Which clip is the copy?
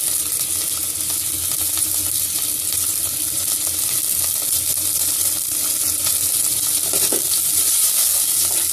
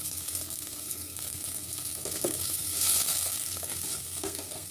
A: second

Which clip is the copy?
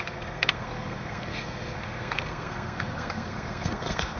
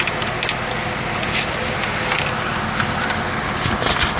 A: first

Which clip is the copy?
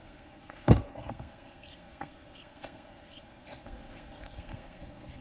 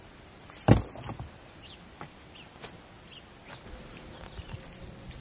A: first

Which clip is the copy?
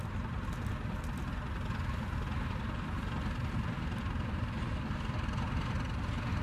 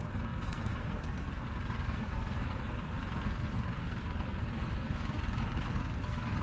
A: second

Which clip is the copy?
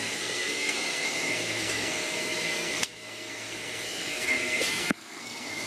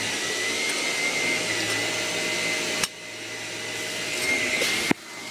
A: first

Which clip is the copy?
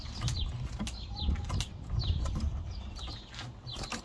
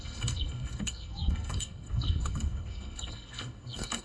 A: second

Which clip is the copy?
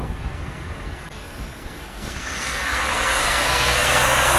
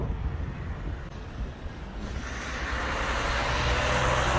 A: first